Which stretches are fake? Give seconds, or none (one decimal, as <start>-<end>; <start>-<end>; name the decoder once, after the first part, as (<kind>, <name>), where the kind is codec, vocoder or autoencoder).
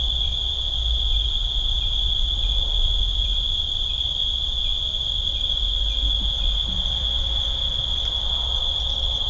0.0-4.2 (vocoder, BigVGAN v2); 6.2-9.3